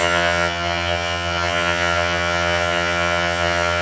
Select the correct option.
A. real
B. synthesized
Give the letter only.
B